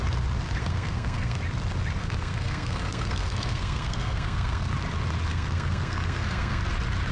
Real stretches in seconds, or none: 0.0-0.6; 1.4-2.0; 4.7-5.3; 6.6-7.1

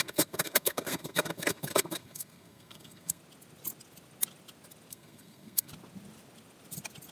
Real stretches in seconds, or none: 3.2-4.9; 5.7-7.1